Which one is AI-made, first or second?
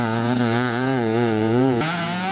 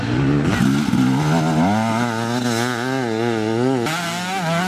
first